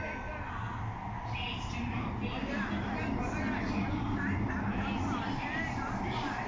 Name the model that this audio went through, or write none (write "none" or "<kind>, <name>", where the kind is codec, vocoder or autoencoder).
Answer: none